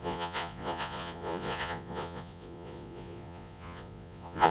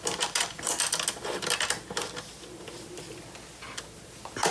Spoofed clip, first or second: first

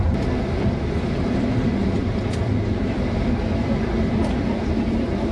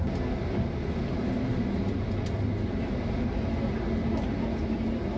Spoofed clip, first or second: first